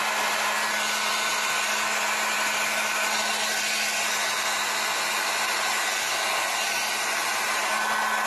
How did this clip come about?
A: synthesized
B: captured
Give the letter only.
B